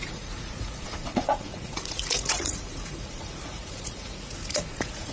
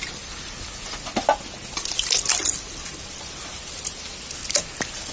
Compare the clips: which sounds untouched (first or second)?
second